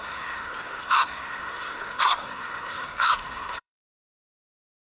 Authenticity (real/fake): fake